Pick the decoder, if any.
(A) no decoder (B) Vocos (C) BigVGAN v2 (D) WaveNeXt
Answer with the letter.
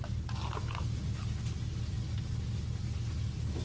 A